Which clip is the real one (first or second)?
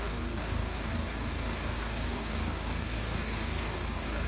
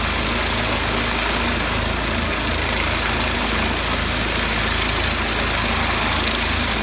second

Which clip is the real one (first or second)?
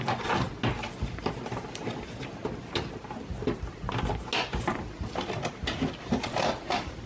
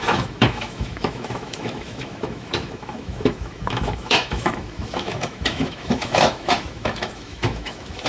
first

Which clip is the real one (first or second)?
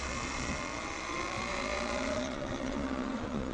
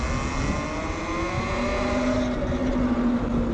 second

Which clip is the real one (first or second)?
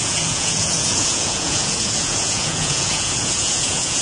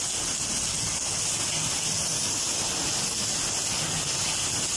second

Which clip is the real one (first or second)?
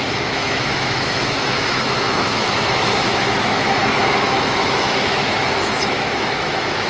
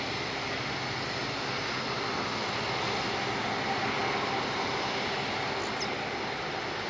second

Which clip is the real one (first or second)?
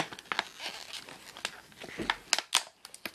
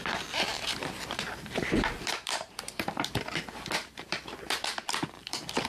first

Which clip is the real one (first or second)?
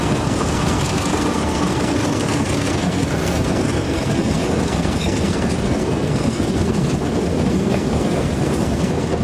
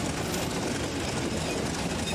second